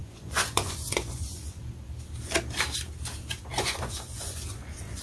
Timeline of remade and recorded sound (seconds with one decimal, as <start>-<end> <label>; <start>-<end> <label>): 0.0-1.6 remade; 1.6-3.5 recorded; 3.5-5.0 remade